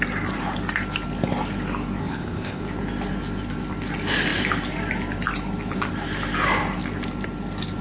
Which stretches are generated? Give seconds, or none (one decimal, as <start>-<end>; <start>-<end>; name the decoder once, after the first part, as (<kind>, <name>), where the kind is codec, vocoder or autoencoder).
2.0-2.6 (codec, ZipCodec)

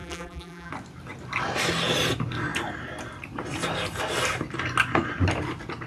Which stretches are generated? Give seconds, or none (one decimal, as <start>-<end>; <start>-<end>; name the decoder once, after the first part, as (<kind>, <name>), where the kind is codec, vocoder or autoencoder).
0.0-0.7 (vocoder, BigVGAN v2)

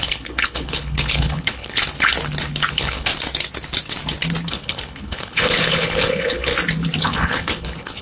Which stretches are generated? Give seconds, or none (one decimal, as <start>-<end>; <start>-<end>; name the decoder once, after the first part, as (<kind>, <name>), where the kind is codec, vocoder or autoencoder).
0.0-1.8 (codec, HILCodec); 2.7-3.1; 4.5-6.5; 7.0-8.0

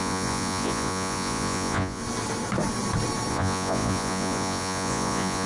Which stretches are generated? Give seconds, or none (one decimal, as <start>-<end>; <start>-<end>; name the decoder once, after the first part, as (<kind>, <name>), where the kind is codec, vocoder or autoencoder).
0.0-2.0 (vocoder, Vocos); 3.3-5.5

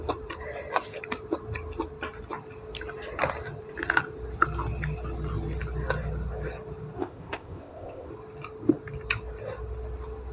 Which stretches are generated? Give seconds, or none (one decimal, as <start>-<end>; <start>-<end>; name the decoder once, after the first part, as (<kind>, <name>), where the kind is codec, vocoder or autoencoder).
7.0-8.1 (codec, ZipCodec)